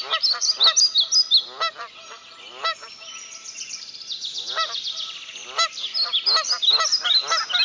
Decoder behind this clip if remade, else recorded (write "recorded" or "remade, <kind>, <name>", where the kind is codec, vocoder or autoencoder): recorded